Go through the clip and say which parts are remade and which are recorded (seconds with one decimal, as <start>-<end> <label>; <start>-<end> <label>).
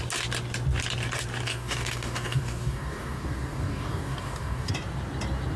0.0-1.5 recorded; 1.5-4.7 remade; 4.7-5.6 recorded